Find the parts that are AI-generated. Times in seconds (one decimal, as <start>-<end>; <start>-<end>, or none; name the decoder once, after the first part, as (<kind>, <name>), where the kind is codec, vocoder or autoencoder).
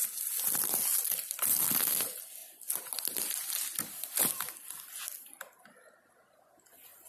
none